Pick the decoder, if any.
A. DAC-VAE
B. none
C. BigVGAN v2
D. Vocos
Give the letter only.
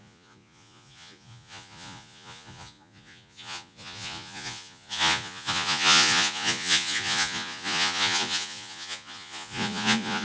D